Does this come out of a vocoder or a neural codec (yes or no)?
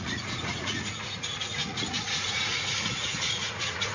yes